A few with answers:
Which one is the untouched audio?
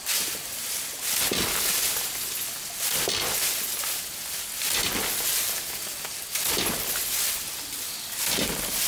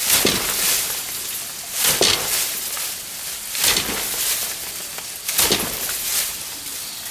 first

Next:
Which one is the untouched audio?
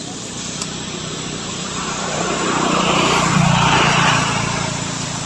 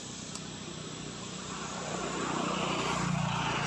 second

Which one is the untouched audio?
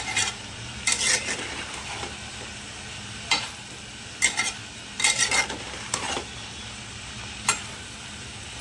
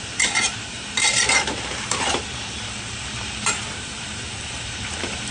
first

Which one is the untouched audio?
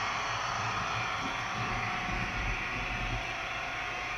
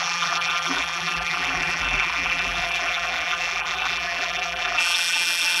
first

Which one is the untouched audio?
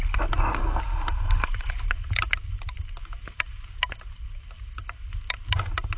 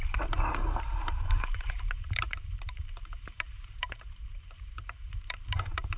first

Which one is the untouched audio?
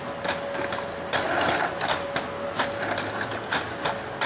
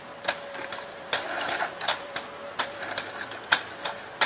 first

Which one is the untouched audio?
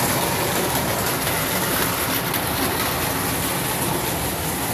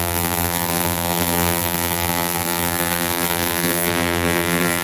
first